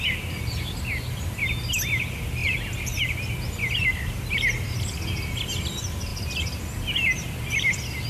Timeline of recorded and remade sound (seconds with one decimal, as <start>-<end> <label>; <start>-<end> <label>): 0.0-8.1 recorded